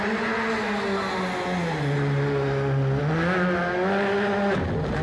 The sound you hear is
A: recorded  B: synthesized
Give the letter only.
A